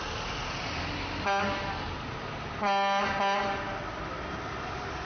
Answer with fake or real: real